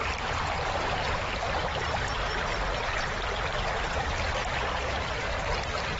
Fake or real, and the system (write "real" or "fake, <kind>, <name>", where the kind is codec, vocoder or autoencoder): fake, vocoder, BigVGAN v2